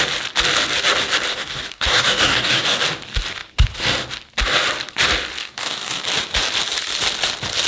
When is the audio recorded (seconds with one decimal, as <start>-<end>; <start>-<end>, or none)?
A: 0.0-1.3; 2.8-5.4; 6.0-7.7